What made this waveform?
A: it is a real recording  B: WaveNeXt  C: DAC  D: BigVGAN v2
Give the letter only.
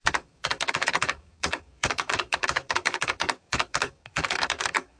C